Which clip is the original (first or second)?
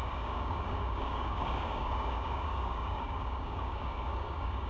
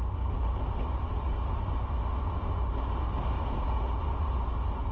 second